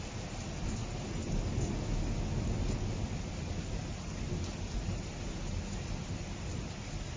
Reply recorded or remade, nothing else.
recorded